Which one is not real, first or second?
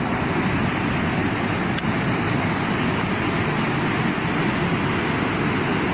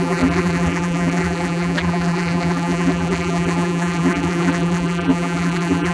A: second